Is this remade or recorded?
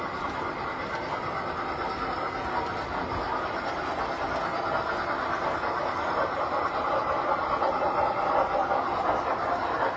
recorded